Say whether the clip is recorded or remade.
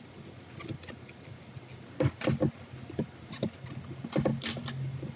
recorded